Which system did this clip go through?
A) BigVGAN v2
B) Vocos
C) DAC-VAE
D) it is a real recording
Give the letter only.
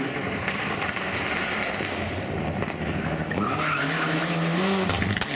D